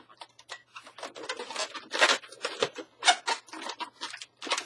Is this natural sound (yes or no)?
yes